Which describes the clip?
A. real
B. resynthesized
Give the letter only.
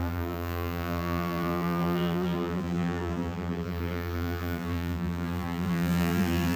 B